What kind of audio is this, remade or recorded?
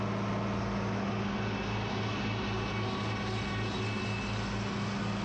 recorded